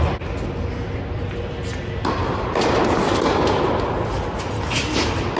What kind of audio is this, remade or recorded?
recorded